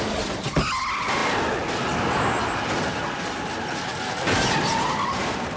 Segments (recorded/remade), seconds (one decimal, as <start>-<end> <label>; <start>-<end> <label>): 0.0-5.6 recorded